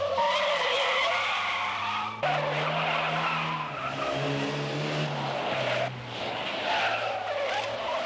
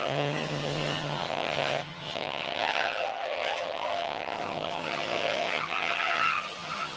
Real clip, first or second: first